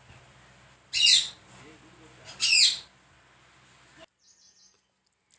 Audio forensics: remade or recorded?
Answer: recorded